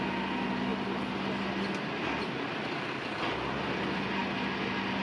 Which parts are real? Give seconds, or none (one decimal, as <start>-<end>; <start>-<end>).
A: 0.0-5.0